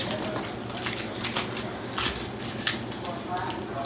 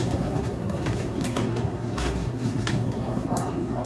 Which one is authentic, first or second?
first